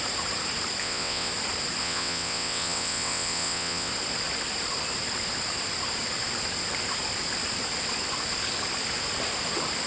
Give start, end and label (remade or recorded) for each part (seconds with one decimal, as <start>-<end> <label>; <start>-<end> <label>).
0.0-0.8 recorded; 0.8-1.3 remade; 1.3-1.8 recorded; 1.8-3.9 remade; 3.9-9.9 recorded